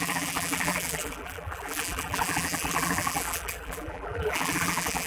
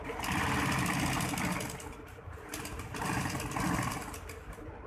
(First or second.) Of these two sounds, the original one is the second